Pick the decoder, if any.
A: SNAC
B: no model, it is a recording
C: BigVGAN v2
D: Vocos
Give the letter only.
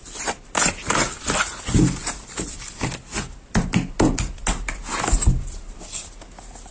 B